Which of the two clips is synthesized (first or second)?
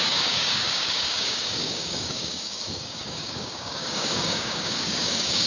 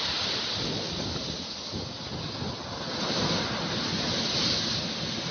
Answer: first